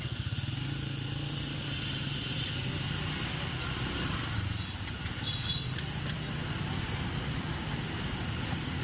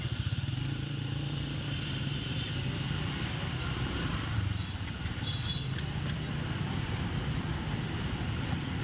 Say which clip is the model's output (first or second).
second